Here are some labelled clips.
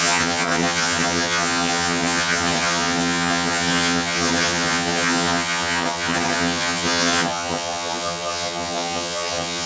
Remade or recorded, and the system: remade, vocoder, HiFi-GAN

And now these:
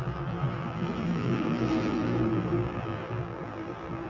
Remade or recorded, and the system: remade, vocoder, BigVGAN v2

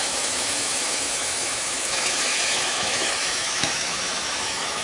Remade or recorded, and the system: remade, autoencoder, DAC-VAE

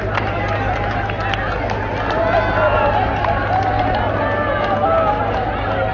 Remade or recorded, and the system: recorded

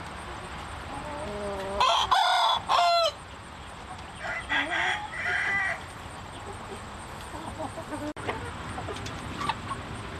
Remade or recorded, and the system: recorded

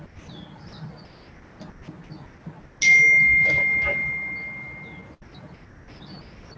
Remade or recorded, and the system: recorded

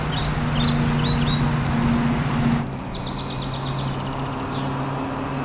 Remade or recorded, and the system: recorded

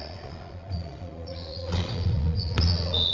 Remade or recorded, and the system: remade, vocoder, Vocos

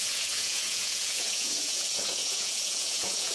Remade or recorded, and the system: remade, vocoder, Vocos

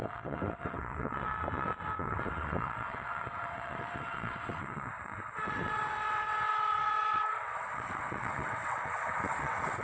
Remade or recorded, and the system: remade, vocoder, WaveNeXt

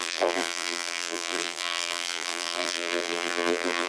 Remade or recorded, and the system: remade, vocoder, BigVGAN v2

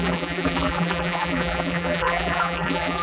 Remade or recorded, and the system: remade, vocoder, BigVGAN v2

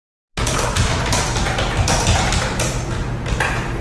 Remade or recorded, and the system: recorded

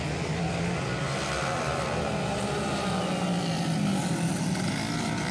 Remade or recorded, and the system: recorded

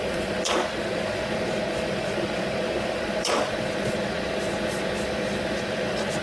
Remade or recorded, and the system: remade, vocoder, Vocos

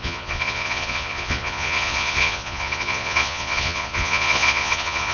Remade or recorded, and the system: remade, vocoder, Vocos